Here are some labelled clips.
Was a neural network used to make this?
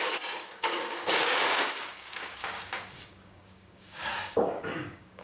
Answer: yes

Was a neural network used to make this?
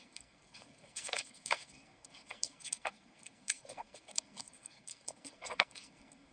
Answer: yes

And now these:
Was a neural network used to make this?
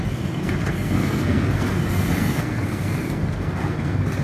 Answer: yes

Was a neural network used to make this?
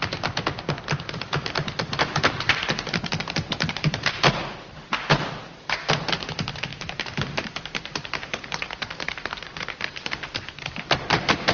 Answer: yes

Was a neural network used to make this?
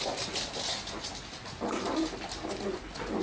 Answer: no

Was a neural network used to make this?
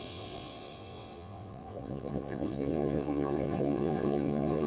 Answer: yes